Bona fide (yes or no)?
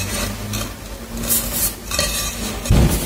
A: yes